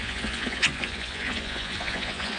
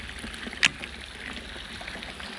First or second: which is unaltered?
second